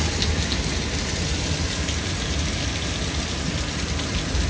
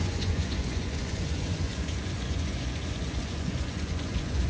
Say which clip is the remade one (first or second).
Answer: second